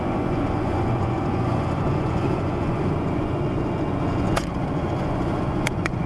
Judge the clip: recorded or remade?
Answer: remade